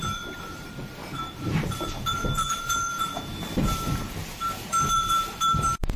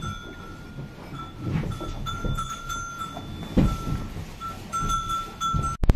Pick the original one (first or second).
second